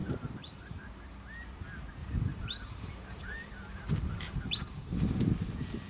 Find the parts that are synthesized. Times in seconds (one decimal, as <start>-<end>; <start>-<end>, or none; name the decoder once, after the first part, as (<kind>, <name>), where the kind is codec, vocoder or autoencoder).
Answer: 0.0-1.0 (vocoder, BigVGAN v2); 2.0-4.9